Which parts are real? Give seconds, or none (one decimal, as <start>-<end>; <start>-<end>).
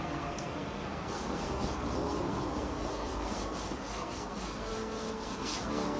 none